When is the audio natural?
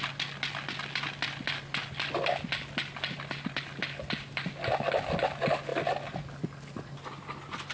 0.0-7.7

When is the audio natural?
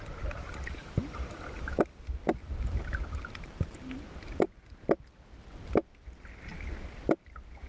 0.0-2.4; 4.0-7.7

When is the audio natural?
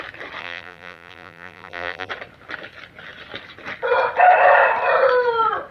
0.0-0.4; 2.1-5.7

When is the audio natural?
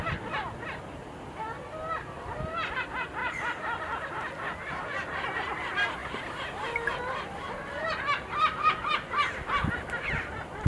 0.0-10.7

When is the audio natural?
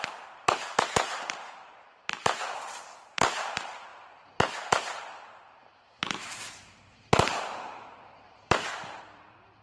3.9-5.0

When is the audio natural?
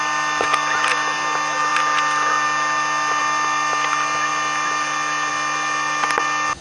0.0-6.6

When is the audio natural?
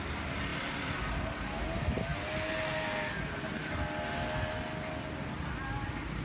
0.0-0.5; 1.1-6.2